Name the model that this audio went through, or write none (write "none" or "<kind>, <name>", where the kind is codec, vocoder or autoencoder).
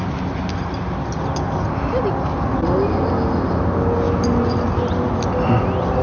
none